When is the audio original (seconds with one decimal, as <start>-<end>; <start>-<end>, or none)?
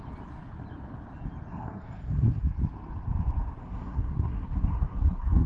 0.0-1.5; 2.4-3.6